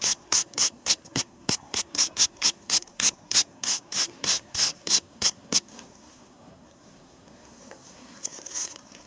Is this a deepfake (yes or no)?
yes